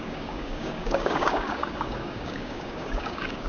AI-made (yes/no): yes